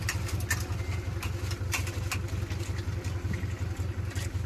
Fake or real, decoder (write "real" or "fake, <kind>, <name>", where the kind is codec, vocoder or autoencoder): real